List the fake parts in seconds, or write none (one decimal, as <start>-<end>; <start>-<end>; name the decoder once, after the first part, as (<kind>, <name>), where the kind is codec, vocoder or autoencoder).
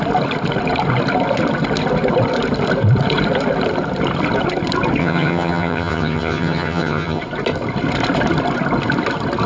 5.0-7.2 (vocoder, HiFi-GAN)